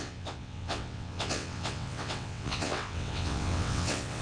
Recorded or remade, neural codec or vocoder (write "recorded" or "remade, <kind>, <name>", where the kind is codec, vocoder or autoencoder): remade, vocoder, WaveNeXt